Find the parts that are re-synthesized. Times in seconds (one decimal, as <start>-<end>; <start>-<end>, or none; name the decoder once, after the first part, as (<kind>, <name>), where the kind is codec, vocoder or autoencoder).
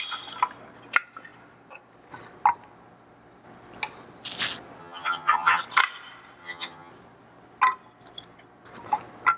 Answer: 4.8-5.6 (vocoder, HiFi-GAN); 6.4-6.9